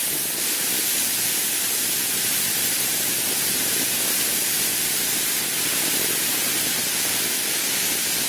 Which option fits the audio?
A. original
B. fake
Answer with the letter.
A